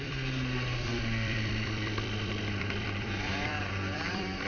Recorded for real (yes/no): no